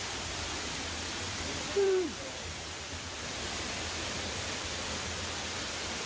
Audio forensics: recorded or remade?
remade